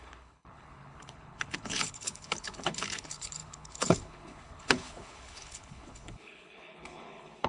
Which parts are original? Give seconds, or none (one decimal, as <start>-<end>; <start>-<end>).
none